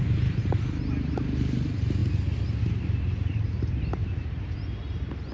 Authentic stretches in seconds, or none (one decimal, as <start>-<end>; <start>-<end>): 0.0-5.3